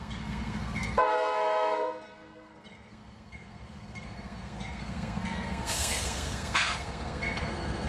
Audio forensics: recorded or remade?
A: remade